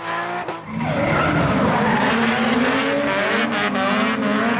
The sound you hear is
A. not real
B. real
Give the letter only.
B